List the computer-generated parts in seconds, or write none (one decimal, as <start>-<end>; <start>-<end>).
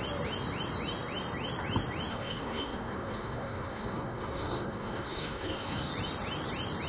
2.1-5.9